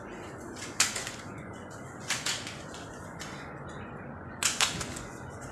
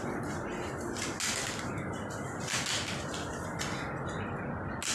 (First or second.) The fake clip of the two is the first